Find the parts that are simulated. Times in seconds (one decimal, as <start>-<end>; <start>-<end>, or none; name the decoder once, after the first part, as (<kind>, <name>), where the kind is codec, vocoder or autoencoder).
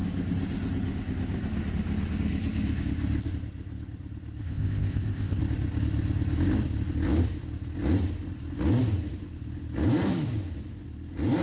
4.4-5.4 (codec, ZipCodec)